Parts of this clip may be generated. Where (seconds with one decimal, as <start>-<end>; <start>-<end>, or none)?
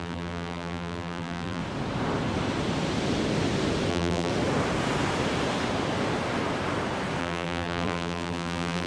0.0-1.6; 3.9-4.3; 7.2-8.9